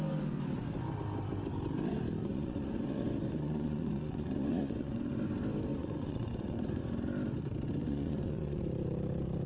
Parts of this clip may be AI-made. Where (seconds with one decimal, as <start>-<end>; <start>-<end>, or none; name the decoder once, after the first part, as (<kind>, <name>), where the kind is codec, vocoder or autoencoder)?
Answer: 2.2-5.1 (vocoder, Vocos); 5.7-6.8; 7.8-8.6